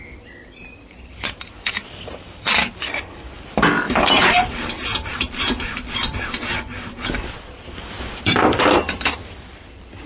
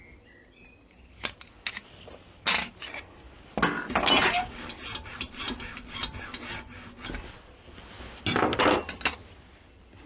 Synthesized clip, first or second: first